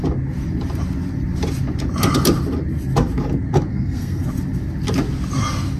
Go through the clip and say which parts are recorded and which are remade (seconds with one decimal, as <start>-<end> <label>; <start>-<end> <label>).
0.0-3.7 recorded; 3.7-4.2 remade; 4.2-5.8 recorded